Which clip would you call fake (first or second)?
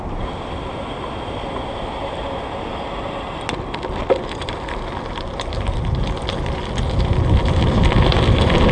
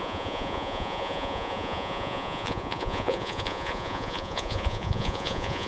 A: second